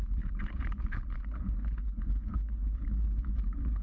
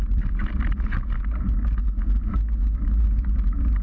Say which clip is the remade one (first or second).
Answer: first